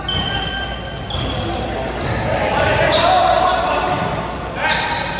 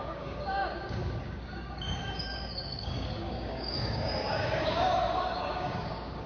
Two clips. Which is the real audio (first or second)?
first